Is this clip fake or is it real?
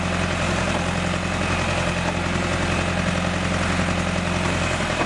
real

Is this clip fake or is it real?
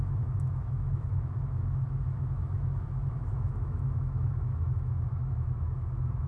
fake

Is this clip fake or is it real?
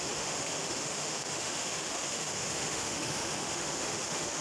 fake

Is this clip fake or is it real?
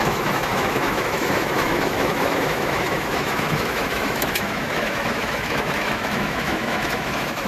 fake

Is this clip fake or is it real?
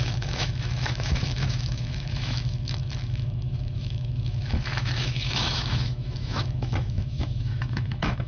fake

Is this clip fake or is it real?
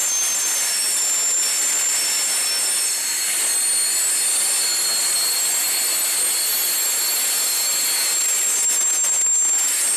real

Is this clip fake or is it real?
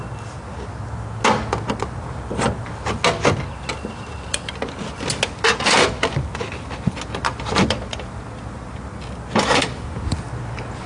real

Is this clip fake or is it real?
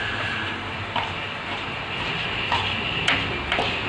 real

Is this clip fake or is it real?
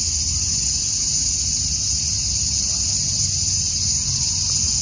real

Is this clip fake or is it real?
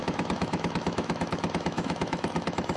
fake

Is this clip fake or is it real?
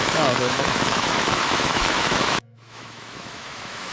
fake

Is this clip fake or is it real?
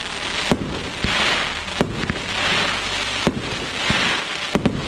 real